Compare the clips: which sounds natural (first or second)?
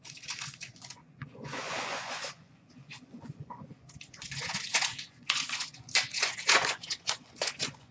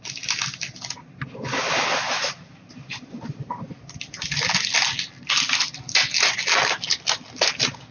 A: second